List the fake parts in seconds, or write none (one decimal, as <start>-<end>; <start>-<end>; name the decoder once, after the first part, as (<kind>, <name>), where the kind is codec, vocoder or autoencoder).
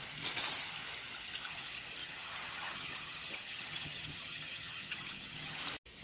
2.0-5.6 (vocoder, HiFi-GAN)